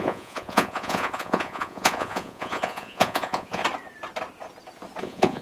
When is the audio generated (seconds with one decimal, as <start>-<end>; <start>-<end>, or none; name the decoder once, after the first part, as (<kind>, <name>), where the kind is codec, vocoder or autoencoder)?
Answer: 0.0-3.6 (vocoder, Vocos); 5.0-5.4